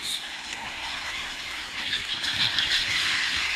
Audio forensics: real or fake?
fake